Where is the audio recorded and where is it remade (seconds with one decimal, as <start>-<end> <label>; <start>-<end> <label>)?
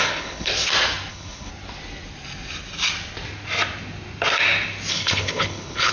0.0-0.5 remade; 0.5-1.1 recorded; 1.1-1.5 remade; 1.5-4.9 recorded; 4.9-5.9 remade